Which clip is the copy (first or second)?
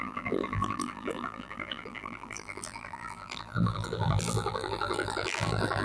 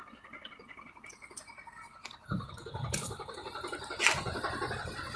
first